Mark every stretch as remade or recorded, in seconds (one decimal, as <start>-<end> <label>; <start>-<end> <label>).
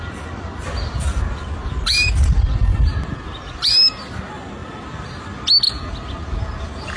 0.0-7.0 recorded